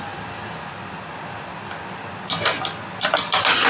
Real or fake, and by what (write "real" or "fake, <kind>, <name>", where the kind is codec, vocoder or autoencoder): real